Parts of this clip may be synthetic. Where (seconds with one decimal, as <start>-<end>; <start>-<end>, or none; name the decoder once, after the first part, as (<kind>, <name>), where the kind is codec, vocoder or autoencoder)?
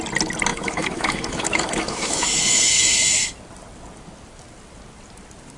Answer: 0.5-3.1 (autoencoder, DAC-VAE)